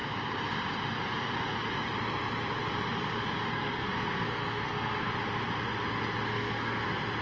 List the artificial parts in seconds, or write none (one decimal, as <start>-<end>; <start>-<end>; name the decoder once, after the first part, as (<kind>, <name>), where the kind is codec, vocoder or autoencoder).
3.5-5.1 (codec, SNAC); 6.3-6.8